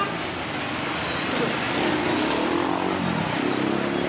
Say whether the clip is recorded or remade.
recorded